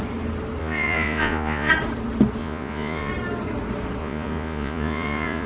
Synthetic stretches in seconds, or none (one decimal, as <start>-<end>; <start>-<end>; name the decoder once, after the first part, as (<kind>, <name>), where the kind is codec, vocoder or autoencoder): 0.6-1.7 (vocoder, Vocos); 2.4-3.1; 4.0-5.5

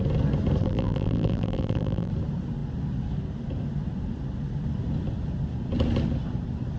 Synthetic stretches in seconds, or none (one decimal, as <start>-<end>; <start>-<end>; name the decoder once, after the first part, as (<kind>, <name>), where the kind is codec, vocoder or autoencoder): 0.6-2.1 (vocoder, BigVGAN v2)